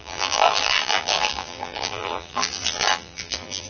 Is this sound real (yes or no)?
no